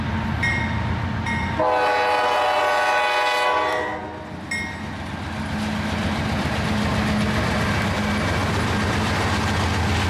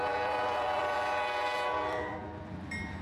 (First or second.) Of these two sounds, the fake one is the second